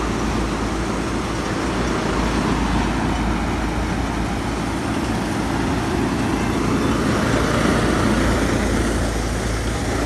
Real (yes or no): yes